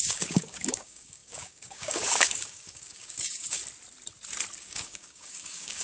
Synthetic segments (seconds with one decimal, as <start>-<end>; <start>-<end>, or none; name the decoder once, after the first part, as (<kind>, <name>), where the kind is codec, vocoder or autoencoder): 0.0-3.6 (codec, DAC); 4.6-5.8